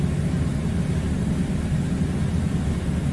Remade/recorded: recorded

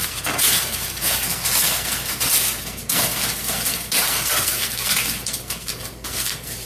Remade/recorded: remade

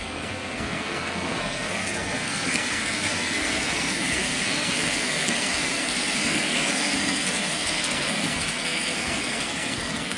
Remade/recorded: remade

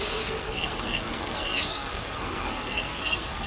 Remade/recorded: remade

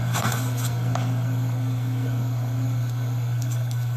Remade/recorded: remade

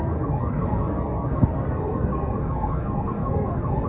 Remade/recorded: remade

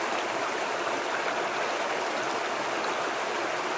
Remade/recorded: recorded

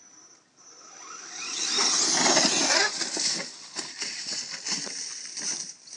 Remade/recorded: recorded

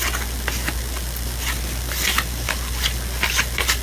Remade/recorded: recorded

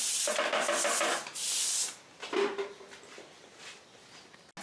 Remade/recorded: recorded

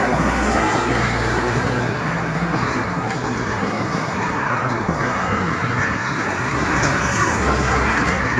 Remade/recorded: remade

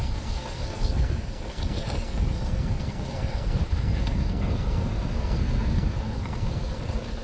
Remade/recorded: remade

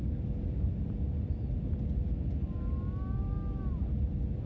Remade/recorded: recorded